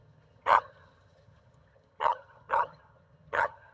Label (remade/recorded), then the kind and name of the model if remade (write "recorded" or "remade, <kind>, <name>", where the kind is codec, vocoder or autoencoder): remade, vocoder, HiFi-GAN